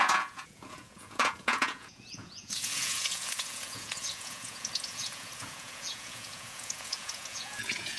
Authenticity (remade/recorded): remade